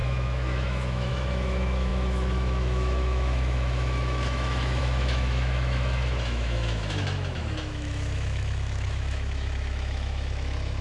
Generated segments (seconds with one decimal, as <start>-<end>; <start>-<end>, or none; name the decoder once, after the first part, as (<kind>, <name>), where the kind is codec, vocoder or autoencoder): 0.0-10.8 (autoencoder, DAC-VAE)